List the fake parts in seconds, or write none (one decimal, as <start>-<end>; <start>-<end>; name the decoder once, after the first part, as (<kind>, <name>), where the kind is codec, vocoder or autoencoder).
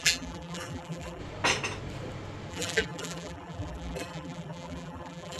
0.0-1.2 (vocoder, BigVGAN v2); 2.5-5.4